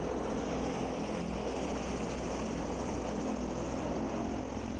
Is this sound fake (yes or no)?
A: no